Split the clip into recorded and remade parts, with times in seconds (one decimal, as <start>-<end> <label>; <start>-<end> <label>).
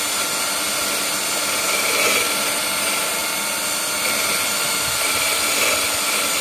0.0-3.2 recorded; 3.2-5.5 remade; 5.5-6.4 recorded